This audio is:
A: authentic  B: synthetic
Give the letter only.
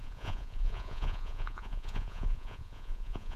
B